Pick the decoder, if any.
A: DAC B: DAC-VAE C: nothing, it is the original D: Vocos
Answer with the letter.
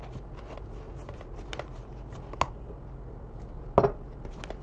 C